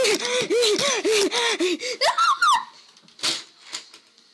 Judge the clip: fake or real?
real